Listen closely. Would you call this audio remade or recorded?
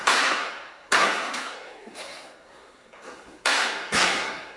remade